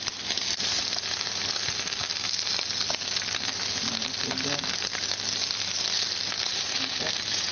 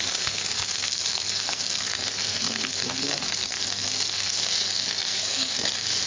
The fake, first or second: second